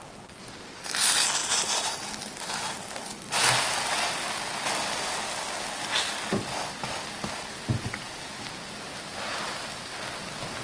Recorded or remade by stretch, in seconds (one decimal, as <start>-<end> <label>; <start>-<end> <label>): 0.0-10.6 recorded

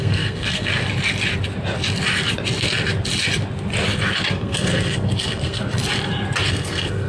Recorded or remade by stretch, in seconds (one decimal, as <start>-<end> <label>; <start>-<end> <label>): 0.0-0.7 remade; 0.7-4.3 recorded; 4.3-5.6 remade; 5.6-6.5 recorded; 6.5-7.1 remade

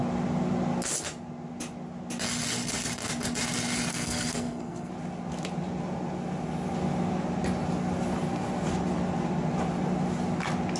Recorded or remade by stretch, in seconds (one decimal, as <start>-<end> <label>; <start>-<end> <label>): 0.0-3.9 recorded; 3.9-4.9 remade; 4.9-10.8 recorded

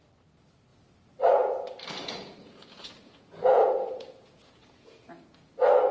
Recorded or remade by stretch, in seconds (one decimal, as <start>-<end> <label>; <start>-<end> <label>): 0.0-2.0 recorded; 2.0-5.5 remade; 5.5-5.9 recorded

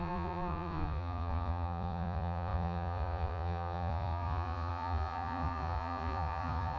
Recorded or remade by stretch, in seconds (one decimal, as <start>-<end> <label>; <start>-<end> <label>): 0.0-6.8 remade

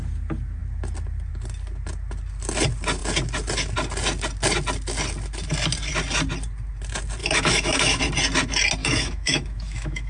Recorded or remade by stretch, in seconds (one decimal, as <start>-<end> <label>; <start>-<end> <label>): 0.0-7.2 recorded; 7.2-8.0 remade; 8.0-8.8 recorded; 8.8-10.1 remade

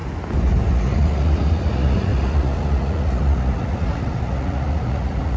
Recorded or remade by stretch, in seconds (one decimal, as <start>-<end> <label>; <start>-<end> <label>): 0.0-0.7 recorded; 0.7-5.4 remade